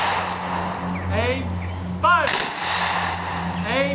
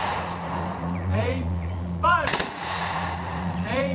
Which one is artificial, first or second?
second